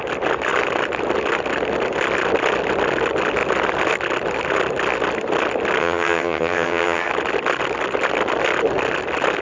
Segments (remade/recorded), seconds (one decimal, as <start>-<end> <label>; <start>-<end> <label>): 0.0-5.8 recorded; 5.8-7.1 remade; 7.1-9.4 recorded